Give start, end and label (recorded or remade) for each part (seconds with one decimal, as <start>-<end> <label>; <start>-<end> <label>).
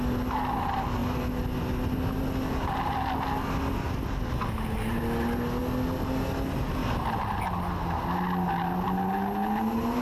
0.0-10.0 recorded